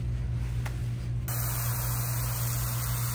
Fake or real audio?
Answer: real